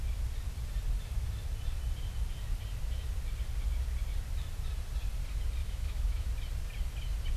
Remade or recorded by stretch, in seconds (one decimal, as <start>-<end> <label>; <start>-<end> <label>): 0.0-5.6 recorded; 5.6-6.3 remade; 6.3-7.4 recorded